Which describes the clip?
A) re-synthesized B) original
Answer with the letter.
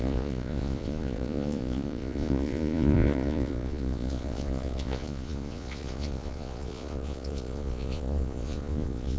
A